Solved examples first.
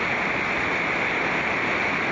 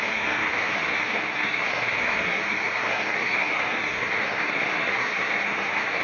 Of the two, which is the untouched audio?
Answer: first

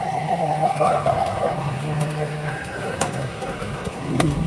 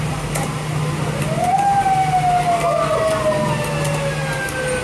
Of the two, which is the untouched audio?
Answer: second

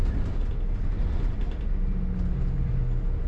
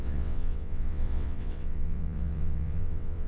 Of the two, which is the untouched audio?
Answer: first